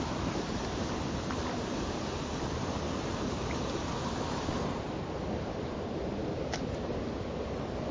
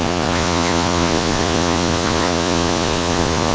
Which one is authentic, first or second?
first